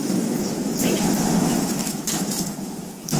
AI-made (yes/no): yes